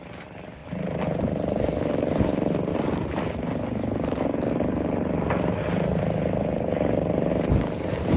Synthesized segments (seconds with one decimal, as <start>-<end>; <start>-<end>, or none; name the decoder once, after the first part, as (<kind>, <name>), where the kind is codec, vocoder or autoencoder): 0.6-1.2 (vocoder, BigVGAN v2); 2.7-7.3